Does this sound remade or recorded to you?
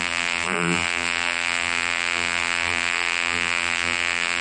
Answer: remade